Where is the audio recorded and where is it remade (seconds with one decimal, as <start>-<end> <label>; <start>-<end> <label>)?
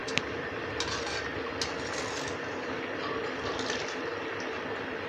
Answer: 0.0-5.1 recorded